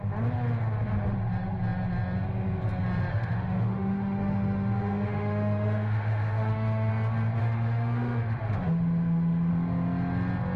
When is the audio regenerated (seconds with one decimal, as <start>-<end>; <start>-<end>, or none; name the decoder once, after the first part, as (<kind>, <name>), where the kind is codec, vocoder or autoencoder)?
3.1-6.9 (autoencoder, DAC-VAE); 7.4-9.5